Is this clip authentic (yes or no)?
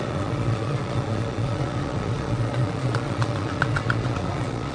no